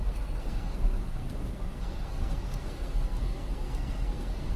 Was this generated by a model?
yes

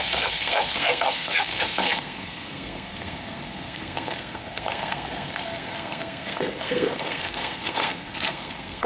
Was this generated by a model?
yes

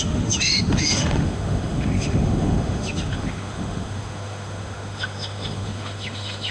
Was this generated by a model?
yes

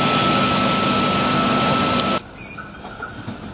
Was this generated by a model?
no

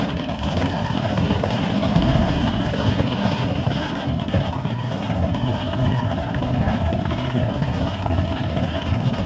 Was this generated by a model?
yes